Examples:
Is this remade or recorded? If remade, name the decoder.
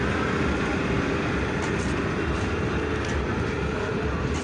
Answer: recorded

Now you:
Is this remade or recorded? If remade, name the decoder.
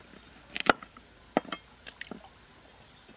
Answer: recorded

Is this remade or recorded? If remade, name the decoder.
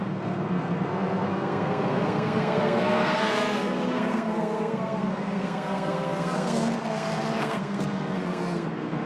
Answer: remade, codec, SNAC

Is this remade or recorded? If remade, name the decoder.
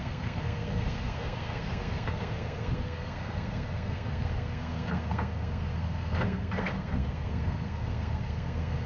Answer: remade, codec, SNAC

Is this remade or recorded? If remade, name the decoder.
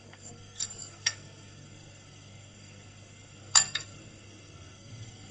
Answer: remade, codec, SNAC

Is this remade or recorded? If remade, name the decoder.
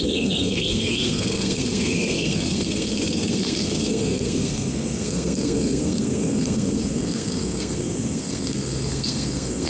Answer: remade, codec, SNAC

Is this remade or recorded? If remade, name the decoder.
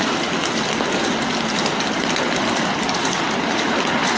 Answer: recorded